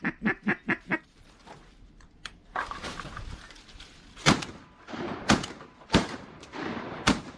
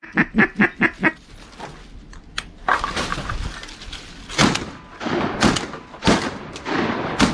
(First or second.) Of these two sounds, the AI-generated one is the first